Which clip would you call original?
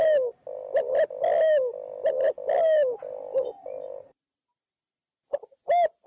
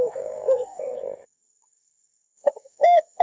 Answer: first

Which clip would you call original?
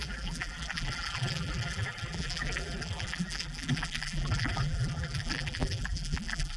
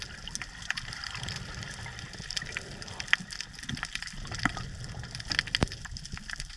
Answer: second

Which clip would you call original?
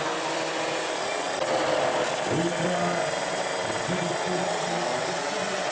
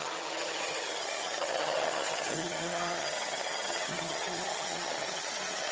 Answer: first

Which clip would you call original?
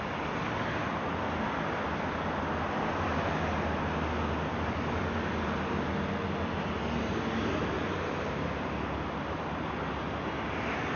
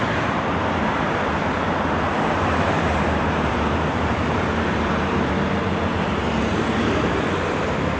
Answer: first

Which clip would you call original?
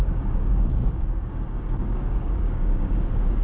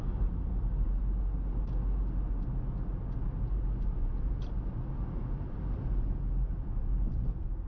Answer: second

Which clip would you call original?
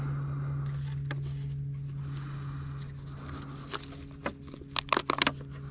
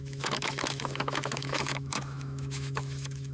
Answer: first